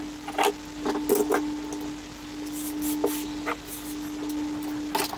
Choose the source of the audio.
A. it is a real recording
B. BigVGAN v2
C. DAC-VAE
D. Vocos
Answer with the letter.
A